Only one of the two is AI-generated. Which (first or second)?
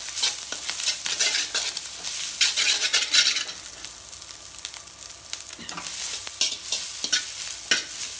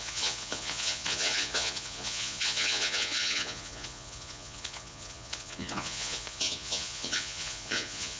second